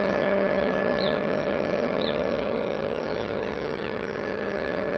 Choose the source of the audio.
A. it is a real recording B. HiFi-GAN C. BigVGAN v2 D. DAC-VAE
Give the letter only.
B